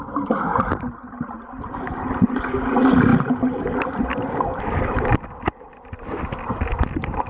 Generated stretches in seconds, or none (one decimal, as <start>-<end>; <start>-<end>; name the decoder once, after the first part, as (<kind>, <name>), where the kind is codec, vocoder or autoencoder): 0.5-1.3 (vocoder, BigVGAN v2)